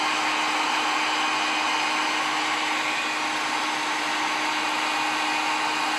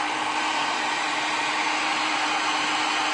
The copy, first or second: second